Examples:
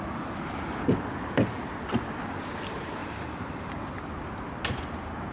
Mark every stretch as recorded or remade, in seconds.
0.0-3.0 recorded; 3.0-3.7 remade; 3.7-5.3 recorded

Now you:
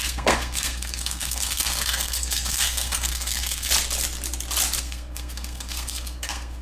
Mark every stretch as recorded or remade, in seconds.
0.0-3.7 remade; 3.7-4.8 recorded; 4.8-6.6 remade

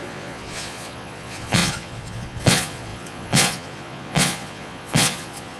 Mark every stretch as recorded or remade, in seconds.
0.0-5.6 remade

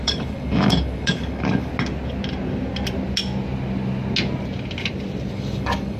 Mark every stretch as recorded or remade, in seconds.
0.0-1.7 remade; 1.7-5.3 recorded; 5.3-6.0 remade